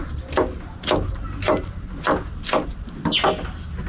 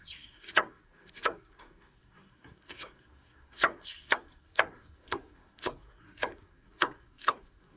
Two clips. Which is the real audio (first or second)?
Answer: first